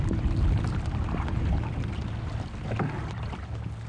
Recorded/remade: recorded